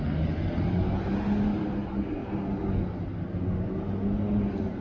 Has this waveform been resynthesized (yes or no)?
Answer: no